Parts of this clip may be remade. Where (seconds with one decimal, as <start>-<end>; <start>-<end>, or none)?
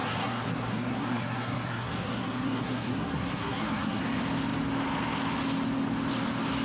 0.0-4.0